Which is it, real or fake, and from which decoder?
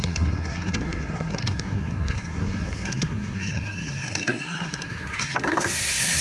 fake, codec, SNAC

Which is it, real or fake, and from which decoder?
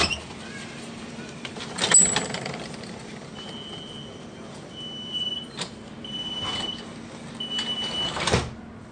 real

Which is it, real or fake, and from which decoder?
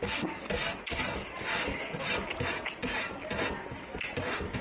real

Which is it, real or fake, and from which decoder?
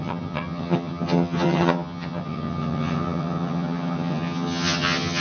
fake, vocoder, HiFi-GAN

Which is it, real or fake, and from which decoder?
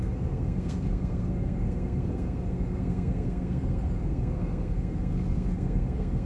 fake, codec, SNAC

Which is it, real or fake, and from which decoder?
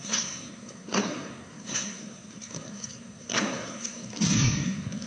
fake, codec, SNAC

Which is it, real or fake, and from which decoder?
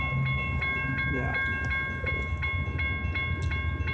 real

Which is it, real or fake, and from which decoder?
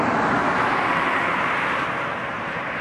real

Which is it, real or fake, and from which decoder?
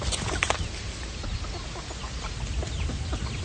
real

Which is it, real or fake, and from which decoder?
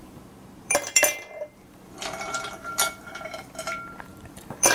fake, vocoder, BigVGAN v2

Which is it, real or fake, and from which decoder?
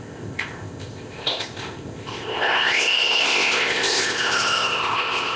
fake, codec, ZipCodec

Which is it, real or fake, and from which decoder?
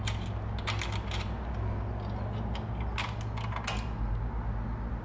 real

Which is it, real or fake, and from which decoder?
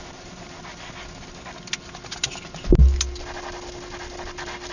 real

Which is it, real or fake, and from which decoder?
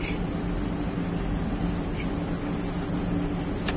real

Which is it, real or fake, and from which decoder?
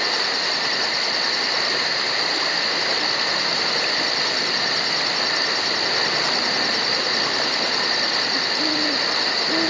real